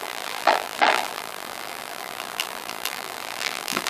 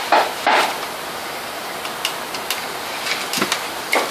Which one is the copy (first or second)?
first